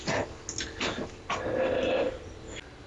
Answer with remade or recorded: recorded